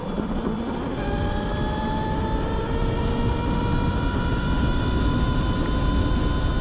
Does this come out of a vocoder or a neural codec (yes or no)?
no